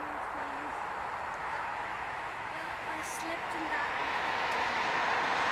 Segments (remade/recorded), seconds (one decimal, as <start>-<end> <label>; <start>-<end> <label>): 0.0-1.4 recorded; 1.4-3.1 remade; 3.1-4.0 recorded; 4.0-4.9 remade; 4.9-5.5 recorded

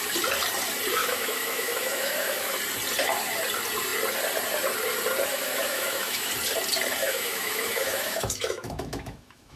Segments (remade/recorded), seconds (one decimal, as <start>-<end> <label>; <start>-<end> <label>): 0.0-1.0 recorded; 1.0-2.6 remade; 2.6-5.3 recorded; 5.3-6.3 remade; 6.3-7.0 recorded; 7.0-9.6 remade